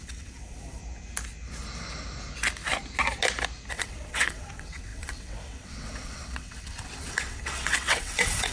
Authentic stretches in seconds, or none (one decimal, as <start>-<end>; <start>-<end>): 0.8-3.7